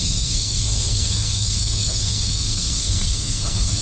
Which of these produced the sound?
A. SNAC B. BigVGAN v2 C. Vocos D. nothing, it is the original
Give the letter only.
A